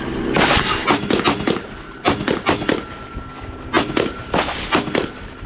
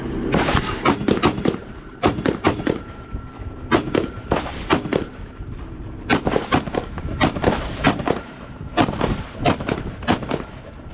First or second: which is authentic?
first